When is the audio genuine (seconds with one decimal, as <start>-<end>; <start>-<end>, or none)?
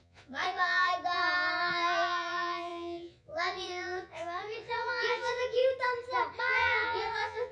0.9-1.6; 5.6-6.4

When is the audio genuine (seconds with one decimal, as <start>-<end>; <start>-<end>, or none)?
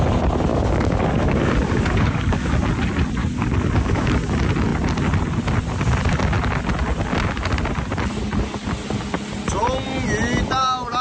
0.0-0.5; 2.6-3.2; 4.1-11.0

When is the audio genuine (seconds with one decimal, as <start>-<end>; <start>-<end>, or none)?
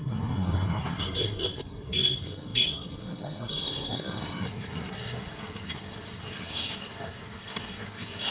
none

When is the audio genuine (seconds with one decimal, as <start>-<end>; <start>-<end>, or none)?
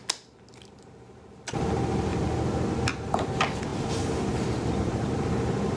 0.0-5.8